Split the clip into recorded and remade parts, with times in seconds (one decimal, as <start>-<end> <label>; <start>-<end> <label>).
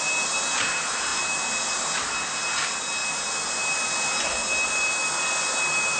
0.0-6.0 recorded